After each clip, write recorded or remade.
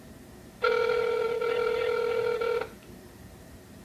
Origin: remade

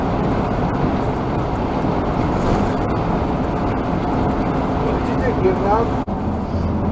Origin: recorded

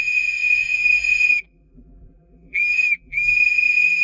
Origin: remade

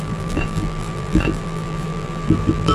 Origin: remade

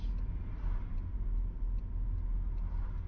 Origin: recorded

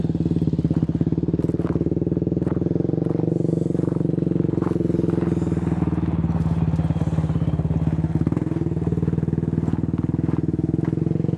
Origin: recorded